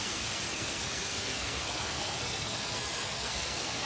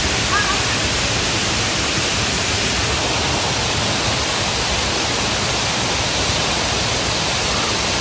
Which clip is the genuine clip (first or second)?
second